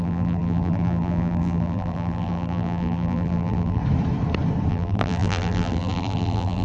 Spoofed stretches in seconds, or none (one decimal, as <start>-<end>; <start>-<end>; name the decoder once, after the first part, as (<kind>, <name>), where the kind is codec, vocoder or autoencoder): 0.0-3.8 (vocoder, BigVGAN v2); 4.7-6.6